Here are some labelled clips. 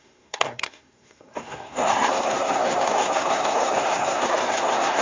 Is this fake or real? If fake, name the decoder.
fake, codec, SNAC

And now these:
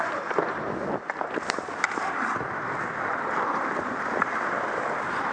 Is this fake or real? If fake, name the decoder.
real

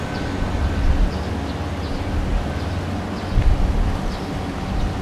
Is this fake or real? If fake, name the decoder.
real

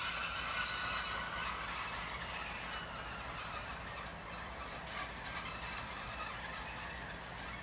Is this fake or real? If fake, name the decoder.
real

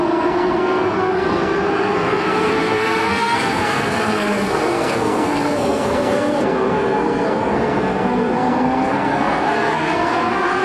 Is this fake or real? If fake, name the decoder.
fake, codec, SNAC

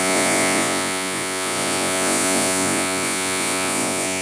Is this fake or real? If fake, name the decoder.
fake, vocoder, Vocos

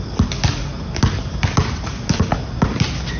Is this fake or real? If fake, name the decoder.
real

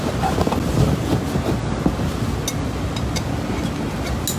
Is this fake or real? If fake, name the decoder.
real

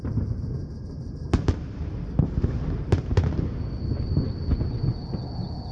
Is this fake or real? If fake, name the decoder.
real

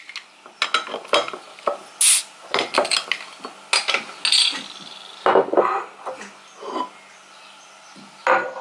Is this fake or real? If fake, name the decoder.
real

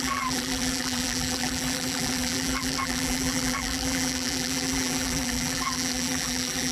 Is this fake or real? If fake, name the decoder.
fake, vocoder, BigVGAN v2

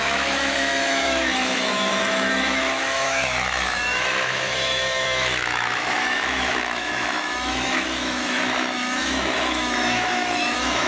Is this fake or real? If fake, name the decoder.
fake, autoencoder, DAC-VAE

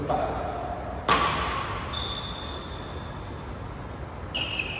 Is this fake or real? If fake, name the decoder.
real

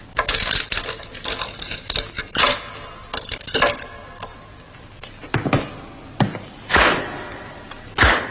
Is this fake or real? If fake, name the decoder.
real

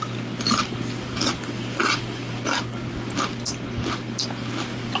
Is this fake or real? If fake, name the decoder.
real